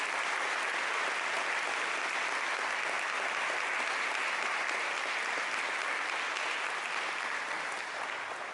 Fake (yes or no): no